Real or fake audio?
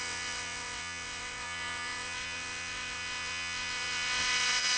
fake